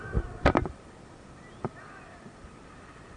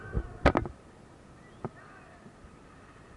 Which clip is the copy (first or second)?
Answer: first